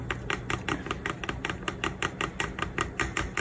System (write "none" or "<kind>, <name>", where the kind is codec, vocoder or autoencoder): none